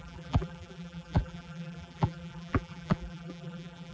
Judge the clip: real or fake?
fake